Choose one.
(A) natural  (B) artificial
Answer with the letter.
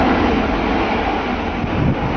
A